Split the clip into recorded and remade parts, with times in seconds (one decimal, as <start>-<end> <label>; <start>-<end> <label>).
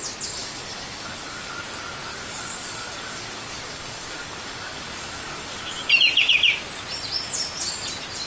0.0-0.4 recorded; 0.4-1.5 remade; 1.5-2.1 recorded; 2.1-5.6 remade; 5.6-8.3 recorded